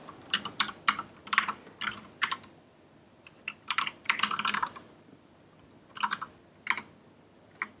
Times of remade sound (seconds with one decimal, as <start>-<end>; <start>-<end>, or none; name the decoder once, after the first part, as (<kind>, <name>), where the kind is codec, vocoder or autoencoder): 0.0-0.6 (vocoder, BigVGAN v2); 2.0-6.4